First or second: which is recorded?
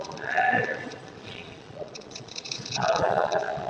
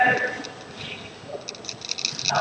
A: second